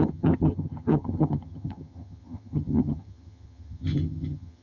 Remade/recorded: remade